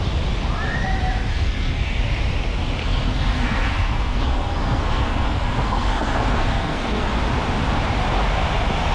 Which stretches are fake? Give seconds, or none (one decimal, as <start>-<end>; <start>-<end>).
1.3-2.0; 2.8-7.2